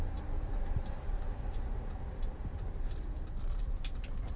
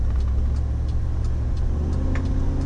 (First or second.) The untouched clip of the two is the second